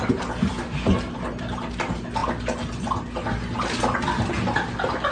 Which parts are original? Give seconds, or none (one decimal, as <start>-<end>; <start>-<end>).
0.0-5.1